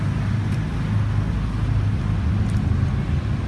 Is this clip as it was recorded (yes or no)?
yes